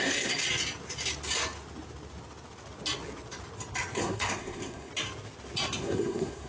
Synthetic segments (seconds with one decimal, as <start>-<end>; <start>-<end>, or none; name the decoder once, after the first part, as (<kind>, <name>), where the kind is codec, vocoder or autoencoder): 0.0-0.4 (codec, SNAC); 4.0-4.9; 5.8-6.5